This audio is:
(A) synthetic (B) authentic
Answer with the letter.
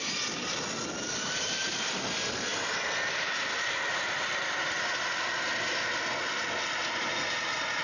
B